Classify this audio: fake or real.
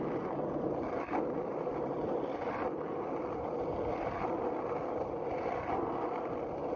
real